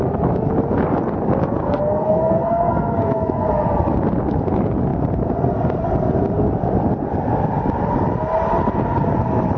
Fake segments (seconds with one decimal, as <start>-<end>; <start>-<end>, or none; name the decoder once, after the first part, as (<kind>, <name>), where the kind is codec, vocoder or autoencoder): 1.6-3.5 (codec, SNAC)